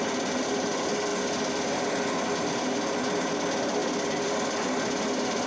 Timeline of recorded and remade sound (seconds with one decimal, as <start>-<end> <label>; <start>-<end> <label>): 0.0-5.5 recorded